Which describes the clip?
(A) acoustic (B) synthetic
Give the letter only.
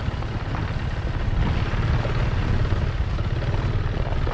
A